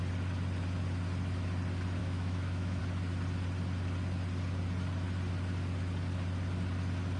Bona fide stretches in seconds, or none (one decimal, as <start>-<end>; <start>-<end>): 0.0-2.0; 2.8-7.2